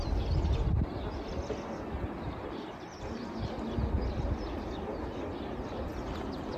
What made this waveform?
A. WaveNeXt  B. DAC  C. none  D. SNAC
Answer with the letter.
C